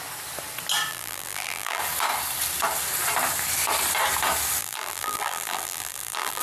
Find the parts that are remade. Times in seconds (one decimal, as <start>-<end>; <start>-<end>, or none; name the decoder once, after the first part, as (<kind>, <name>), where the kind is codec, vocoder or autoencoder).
0.9-1.8 (vocoder, BigVGAN v2); 4.6-6.4